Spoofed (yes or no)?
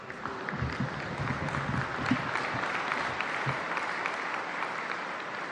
no